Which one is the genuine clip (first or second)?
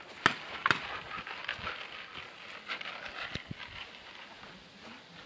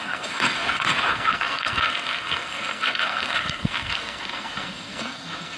first